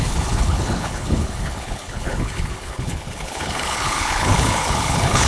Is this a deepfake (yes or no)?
yes